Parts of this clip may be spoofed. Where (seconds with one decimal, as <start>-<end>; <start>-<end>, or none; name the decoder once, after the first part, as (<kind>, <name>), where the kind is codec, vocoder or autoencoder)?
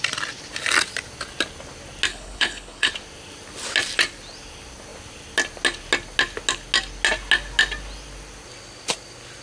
2.1-2.9 (codec, HILCodec)